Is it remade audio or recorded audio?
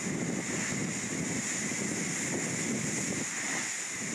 recorded